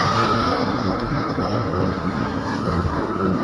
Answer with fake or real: fake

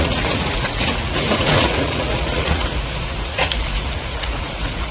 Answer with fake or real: fake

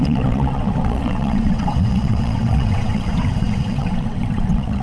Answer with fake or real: fake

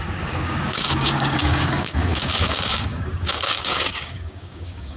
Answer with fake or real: fake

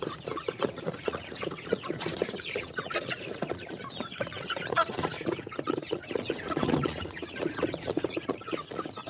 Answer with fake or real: fake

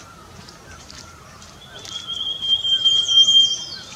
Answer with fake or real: fake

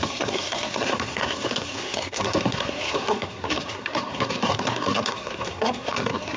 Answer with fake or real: fake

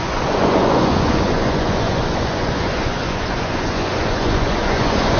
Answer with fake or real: fake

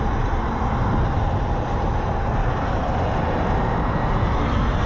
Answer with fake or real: real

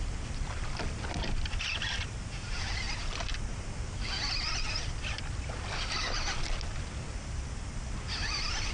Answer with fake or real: real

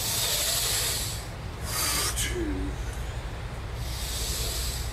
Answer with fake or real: real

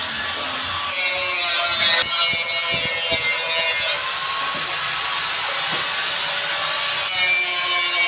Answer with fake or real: real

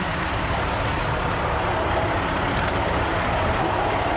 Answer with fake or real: real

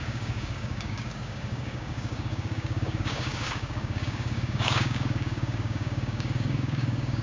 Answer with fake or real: fake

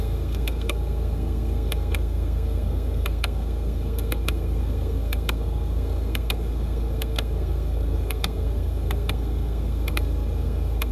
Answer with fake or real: fake